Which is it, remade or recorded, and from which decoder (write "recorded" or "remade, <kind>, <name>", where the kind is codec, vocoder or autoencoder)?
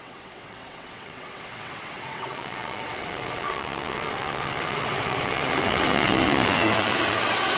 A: remade, vocoder, WaveNeXt